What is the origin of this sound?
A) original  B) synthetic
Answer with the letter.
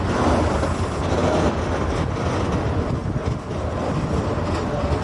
A